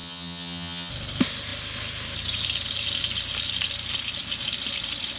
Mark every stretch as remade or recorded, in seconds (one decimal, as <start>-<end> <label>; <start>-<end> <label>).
0.0-0.9 remade; 0.9-5.2 recorded

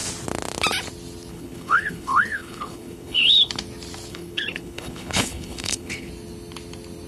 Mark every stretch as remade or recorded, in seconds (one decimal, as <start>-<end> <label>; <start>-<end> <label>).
0.0-1.3 recorded; 1.3-3.5 remade; 3.5-4.1 recorded; 4.1-6.1 remade; 6.1-7.1 recorded

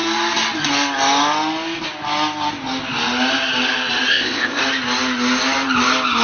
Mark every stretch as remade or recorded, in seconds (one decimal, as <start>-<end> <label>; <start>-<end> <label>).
0.0-4.1 recorded; 4.1-4.6 remade; 4.6-6.2 recorded

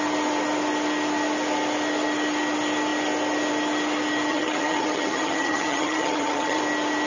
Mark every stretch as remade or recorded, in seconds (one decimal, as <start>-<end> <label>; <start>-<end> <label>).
0.0-4.3 recorded; 4.3-6.6 remade; 6.6-7.1 recorded

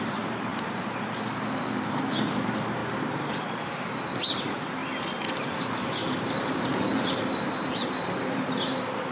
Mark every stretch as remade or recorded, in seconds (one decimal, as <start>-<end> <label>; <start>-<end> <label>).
0.0-0.5 remade; 0.5-1.6 recorded; 1.6-4.8 remade; 4.8-5.3 recorded; 5.3-9.1 remade

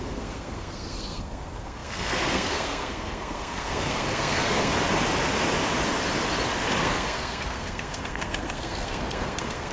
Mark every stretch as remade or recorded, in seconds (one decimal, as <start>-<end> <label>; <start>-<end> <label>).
0.0-4.7 remade; 4.7-6.8 recorded; 6.8-9.7 remade